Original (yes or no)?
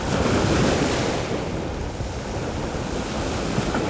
yes